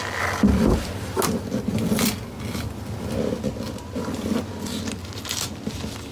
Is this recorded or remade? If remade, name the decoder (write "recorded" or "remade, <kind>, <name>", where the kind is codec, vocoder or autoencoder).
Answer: recorded